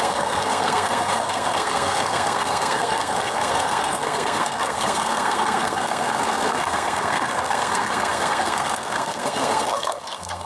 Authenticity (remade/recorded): remade